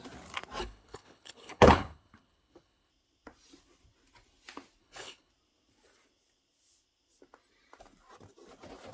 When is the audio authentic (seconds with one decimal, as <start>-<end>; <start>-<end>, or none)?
0.0-0.6; 2.9-4.8; 5.3-8.9